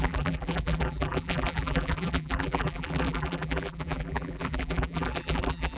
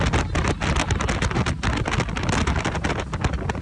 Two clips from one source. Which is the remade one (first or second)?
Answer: first